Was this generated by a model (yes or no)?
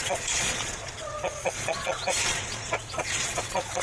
yes